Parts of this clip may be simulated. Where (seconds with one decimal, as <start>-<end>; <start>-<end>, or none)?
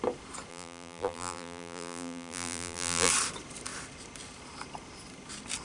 0.5-3.1